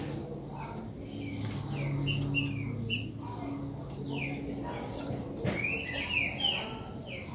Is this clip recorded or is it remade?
recorded